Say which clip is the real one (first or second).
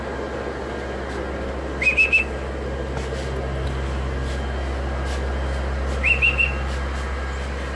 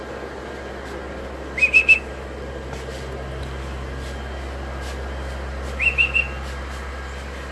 first